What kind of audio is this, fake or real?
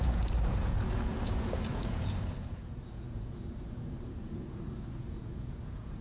fake